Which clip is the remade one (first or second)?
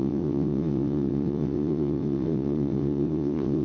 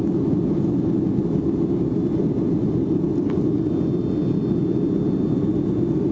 first